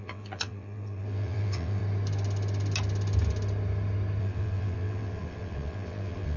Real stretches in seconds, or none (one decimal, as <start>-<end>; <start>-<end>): 1.8-4.2